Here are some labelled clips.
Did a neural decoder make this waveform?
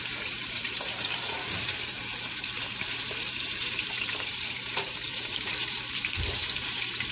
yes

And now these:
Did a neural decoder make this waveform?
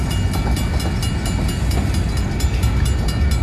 no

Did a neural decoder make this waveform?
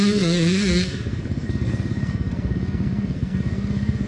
yes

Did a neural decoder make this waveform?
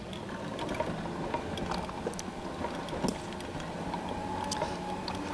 no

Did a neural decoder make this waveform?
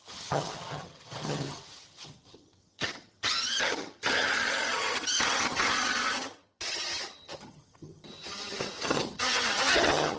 yes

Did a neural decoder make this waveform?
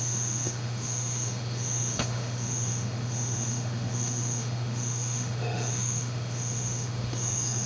yes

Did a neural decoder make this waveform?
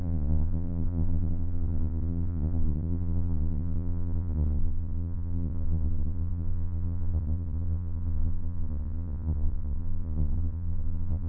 yes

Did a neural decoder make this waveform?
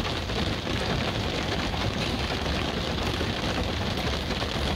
no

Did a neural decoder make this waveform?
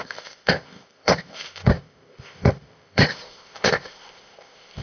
yes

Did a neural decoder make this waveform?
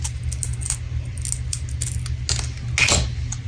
no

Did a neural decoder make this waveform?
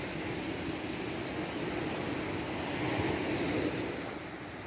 no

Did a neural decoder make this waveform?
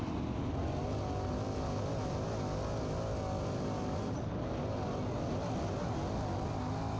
no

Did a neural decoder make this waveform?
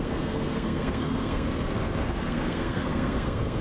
yes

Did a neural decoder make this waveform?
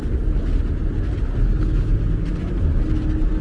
no